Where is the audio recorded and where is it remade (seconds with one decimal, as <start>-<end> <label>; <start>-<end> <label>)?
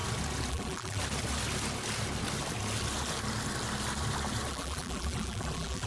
0.0-0.5 recorded; 0.5-1.0 remade; 1.0-4.5 recorded; 4.5-5.9 remade